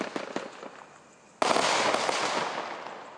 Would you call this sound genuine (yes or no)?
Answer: yes